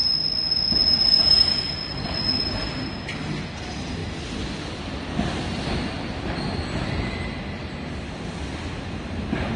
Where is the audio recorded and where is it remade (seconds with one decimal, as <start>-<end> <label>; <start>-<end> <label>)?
0.0-9.6 recorded